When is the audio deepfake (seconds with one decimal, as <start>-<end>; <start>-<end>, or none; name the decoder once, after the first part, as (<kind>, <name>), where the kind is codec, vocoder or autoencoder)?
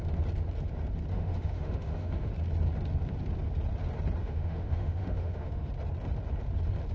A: 1.1-2.3 (autoencoder, DAC-VAE); 4.2-5.7